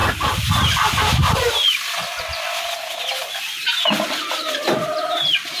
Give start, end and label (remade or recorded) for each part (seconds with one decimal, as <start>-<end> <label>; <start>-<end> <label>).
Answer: 0.0-5.6 recorded